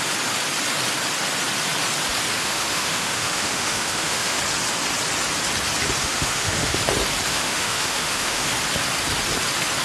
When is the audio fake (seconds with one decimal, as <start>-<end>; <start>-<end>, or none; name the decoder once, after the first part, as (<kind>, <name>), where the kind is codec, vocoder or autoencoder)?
2.4-4.4 (autoencoder, DAC-VAE); 6.0-6.8; 7.3-8.5